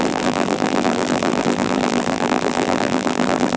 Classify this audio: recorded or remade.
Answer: remade